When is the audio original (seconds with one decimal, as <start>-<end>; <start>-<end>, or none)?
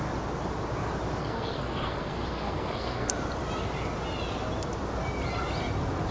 0.0-1.2; 3.1-6.1